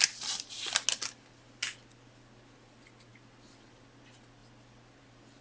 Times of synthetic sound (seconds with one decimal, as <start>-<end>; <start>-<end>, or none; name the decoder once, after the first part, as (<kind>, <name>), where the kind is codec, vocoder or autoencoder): none